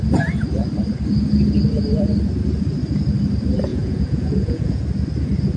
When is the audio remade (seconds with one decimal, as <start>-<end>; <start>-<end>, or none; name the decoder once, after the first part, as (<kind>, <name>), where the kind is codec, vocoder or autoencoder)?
3.7-4.8 (vocoder, Vocos)